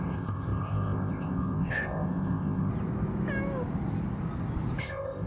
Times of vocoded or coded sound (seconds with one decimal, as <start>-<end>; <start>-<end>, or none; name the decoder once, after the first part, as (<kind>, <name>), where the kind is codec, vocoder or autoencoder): 0.0-2.7 (codec, ZipCodec); 4.8-5.3